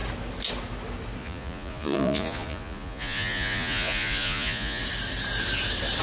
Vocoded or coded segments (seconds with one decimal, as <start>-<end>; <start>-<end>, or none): 1.2-4.8